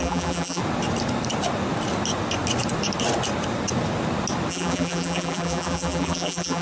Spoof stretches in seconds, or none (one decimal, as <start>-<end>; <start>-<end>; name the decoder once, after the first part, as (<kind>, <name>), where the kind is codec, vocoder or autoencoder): 0.0-0.6 (vocoder, BigVGAN v2); 4.5-6.6

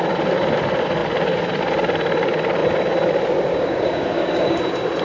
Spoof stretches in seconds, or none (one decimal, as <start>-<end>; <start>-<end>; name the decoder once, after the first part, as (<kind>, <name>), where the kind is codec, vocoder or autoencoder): 3.5-4.6 (codec, DAC)

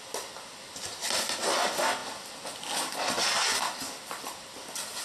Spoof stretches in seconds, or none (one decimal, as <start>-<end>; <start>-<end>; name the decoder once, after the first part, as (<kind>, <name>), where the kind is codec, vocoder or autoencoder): none

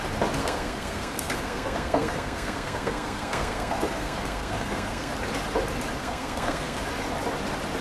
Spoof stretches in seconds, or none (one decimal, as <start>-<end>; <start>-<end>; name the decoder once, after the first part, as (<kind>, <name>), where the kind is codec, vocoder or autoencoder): 0.4-5.1 (codec, SNAC); 6.0-6.8

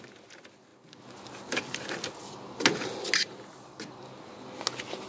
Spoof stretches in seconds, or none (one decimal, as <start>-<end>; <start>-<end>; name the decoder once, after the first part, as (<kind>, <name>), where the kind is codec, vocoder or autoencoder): none

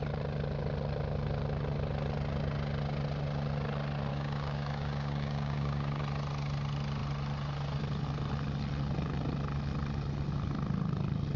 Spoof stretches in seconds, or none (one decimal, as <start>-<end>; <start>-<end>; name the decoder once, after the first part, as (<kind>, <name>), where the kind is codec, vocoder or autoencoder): 4.1-6.0 (codec, DAC)

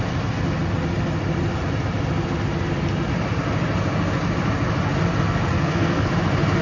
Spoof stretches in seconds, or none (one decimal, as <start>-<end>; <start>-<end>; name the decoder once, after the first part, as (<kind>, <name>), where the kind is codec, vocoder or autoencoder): 5.5-6.1 (codec, SNAC)

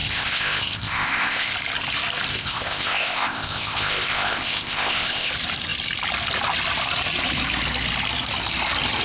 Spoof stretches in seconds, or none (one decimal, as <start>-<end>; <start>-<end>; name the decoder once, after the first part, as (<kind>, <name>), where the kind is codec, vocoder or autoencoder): 0.0-1.5 (codec, ZipCodec); 2.3-5.3